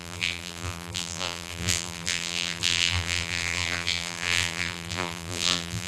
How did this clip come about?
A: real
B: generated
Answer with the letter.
B